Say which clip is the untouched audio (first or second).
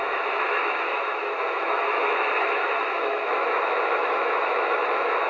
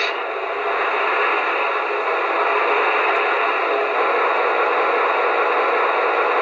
second